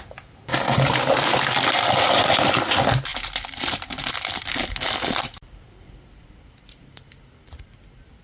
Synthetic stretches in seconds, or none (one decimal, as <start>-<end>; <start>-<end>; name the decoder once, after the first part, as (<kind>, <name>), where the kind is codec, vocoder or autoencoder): none